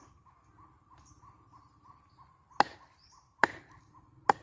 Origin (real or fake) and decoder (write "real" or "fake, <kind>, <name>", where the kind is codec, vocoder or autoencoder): fake, vocoder, BigVGAN v2